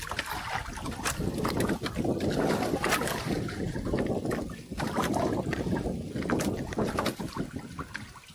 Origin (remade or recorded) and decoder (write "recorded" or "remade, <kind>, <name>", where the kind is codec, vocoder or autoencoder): recorded